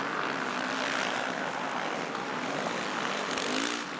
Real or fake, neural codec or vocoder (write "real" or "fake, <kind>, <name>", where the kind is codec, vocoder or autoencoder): real